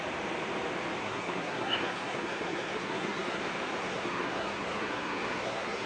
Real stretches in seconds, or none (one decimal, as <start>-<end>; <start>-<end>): 0.0-1.0; 3.4-3.8

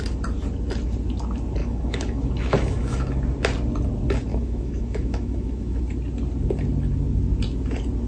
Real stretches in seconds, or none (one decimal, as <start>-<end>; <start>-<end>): 0.0-1.6; 3.2-4.3; 5.8-8.1

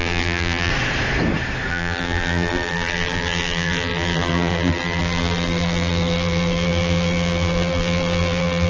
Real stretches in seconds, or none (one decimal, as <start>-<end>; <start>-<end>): 0.7-1.7

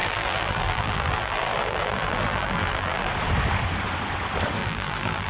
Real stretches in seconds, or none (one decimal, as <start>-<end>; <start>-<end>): 3.1-4.6